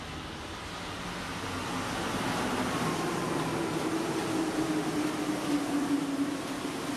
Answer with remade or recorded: recorded